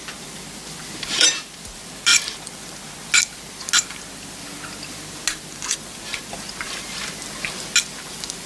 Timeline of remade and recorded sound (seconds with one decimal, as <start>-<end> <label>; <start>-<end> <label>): 0.0-8.5 recorded